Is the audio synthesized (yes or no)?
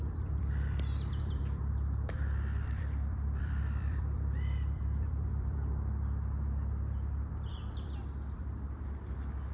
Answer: yes